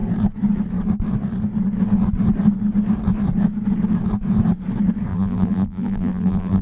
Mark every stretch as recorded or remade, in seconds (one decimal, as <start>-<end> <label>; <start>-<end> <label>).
0.0-5.1 recorded; 5.1-6.6 remade

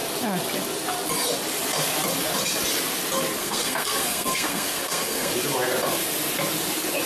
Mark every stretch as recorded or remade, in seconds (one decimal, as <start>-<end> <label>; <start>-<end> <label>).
0.0-3.4 recorded; 3.4-5.3 remade; 5.3-7.1 recorded

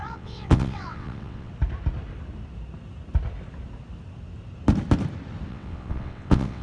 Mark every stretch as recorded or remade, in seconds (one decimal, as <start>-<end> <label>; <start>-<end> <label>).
0.0-1.5 remade; 1.5-5.5 recorded; 5.5-6.6 remade

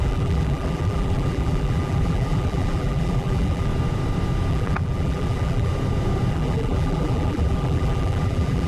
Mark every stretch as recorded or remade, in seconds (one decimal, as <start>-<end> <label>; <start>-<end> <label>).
0.0-3.7 remade; 3.7-4.5 recorded; 4.5-5.7 remade; 5.7-6.3 recorded; 6.3-8.7 remade

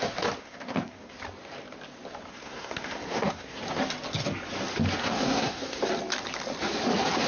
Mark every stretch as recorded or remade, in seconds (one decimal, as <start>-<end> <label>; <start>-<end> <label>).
0.0-0.4 recorded; 0.4-1.1 remade; 1.1-2.3 recorded; 2.3-3.6 remade; 3.6-5.0 recorded; 5.0-5.8 remade; 5.8-7.3 recorded

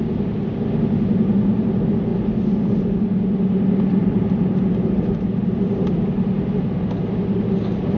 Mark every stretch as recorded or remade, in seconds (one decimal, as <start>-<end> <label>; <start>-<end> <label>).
0.0-4.0 recorded; 4.0-6.9 remade; 6.9-8.0 recorded

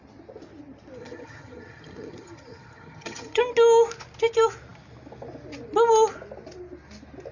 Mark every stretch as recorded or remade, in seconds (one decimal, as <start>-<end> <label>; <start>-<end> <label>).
0.0-1.0 recorded; 1.0-3.4 remade; 3.4-7.3 recorded

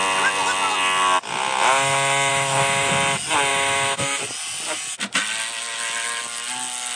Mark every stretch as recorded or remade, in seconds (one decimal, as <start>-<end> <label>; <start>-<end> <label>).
0.0-2.3 recorded; 2.3-2.9 remade; 2.9-3.5 recorded; 3.5-4.2 remade; 4.2-7.0 recorded